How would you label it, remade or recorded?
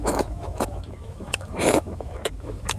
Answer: remade